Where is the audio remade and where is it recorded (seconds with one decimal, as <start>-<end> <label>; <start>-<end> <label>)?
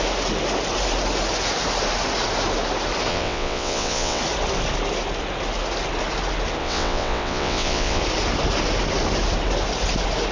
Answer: 0.0-3.1 recorded; 3.1-4.2 remade; 4.2-6.6 recorded; 6.6-8.0 remade; 8.0-10.3 recorded